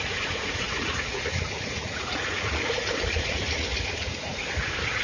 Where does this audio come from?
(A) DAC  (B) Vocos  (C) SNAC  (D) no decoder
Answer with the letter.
B